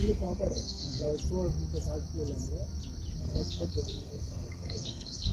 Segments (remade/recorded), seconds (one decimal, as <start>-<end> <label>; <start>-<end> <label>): 0.0-1.1 remade; 1.1-3.2 recorded; 3.2-5.3 remade